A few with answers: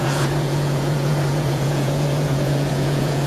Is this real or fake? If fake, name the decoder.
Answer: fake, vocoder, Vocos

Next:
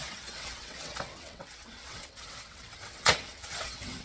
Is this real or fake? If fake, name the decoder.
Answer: fake, vocoder, WaveNeXt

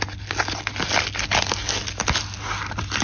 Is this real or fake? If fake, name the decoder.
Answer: real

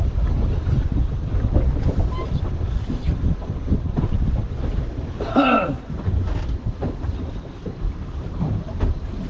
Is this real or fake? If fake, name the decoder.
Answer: real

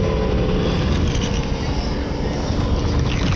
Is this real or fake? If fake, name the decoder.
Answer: real